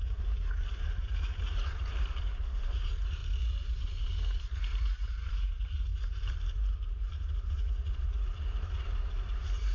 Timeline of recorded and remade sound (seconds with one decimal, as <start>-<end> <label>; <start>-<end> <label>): 0.0-9.7 remade